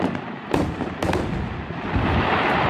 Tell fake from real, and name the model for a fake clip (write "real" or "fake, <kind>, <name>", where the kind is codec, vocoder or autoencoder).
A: real